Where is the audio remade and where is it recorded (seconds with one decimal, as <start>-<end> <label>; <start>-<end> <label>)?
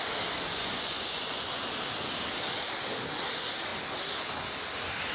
0.0-0.5 recorded; 0.5-1.5 remade; 1.5-5.1 recorded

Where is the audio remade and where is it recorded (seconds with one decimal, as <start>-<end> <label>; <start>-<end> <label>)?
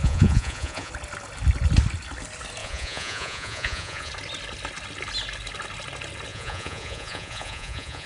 0.0-0.9 remade; 0.9-2.6 recorded; 2.6-4.1 remade; 4.1-6.3 recorded; 6.3-8.1 remade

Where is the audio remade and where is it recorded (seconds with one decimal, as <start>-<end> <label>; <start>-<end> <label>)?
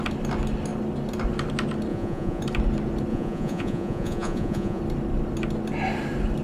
0.0-1.9 recorded; 1.9-2.4 remade; 2.4-3.1 recorded; 3.1-4.8 remade; 4.8-6.4 recorded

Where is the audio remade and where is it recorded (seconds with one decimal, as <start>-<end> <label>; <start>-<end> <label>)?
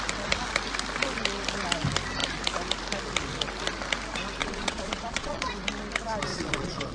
0.0-4.4 recorded; 4.4-5.5 remade; 5.5-6.3 recorded; 6.3-6.9 remade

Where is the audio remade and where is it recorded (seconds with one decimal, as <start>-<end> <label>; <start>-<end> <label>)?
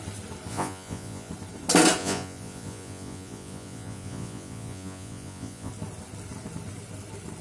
0.0-0.5 recorded; 0.5-1.3 remade; 1.3-2.0 recorded; 2.0-5.7 remade; 5.7-7.4 recorded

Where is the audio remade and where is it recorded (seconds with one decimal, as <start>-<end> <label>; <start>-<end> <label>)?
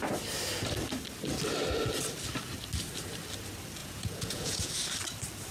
0.0-3.8 recorded; 3.8-4.7 remade; 4.7-5.5 recorded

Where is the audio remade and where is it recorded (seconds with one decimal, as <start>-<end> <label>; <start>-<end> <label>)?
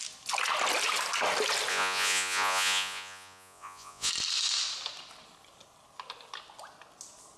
0.0-1.7 recorded; 1.7-4.1 remade; 4.1-7.4 recorded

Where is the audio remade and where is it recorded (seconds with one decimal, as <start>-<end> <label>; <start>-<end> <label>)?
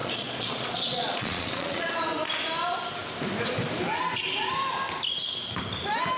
0.0-1.9 remade; 1.9-6.2 recorded